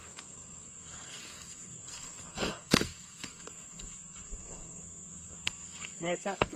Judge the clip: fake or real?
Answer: fake